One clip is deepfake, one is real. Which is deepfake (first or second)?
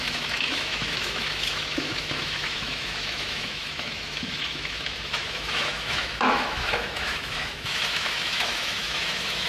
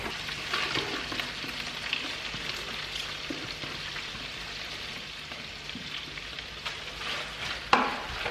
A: first